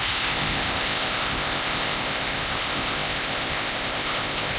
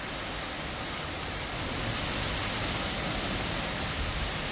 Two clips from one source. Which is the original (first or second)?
second